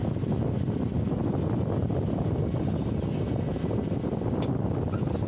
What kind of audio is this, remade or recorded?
recorded